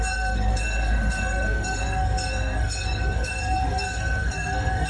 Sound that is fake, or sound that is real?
fake